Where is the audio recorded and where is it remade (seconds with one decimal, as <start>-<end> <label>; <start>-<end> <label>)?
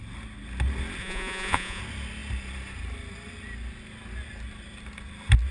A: 0.0-1.0 recorded; 1.0-1.8 remade; 1.8-5.5 recorded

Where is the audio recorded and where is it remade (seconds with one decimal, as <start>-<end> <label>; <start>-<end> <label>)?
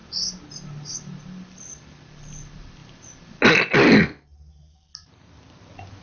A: 0.0-0.9 recorded; 0.9-2.8 remade; 2.8-3.5 recorded; 3.5-3.9 remade; 3.9-5.3 recorded; 5.3-6.0 remade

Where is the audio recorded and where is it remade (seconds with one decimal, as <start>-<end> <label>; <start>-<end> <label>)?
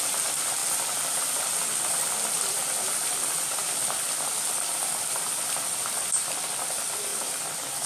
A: 0.0-7.1 recorded; 7.1-7.9 remade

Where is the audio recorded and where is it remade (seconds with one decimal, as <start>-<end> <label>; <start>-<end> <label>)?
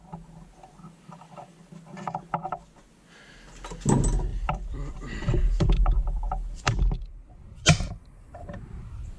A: 0.0-4.3 recorded; 4.3-7.9 remade; 7.9-9.2 recorded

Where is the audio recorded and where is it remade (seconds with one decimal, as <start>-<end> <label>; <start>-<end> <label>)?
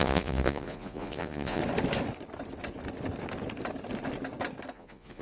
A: 0.0-1.6 remade; 1.6-4.7 recorded; 4.7-5.2 remade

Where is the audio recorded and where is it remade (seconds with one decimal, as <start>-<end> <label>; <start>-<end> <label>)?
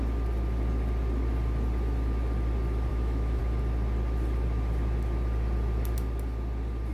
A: 0.0-2.9 recorded; 2.9-3.4 remade; 3.4-6.9 recorded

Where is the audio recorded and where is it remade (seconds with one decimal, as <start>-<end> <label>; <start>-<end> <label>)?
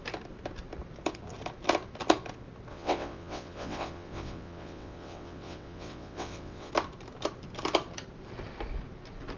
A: 0.0-2.7 recorded; 2.7-6.7 remade; 6.7-9.4 recorded